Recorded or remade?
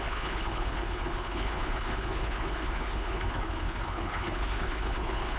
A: remade